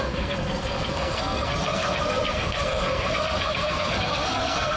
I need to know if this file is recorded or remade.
remade